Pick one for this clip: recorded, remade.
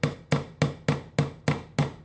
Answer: recorded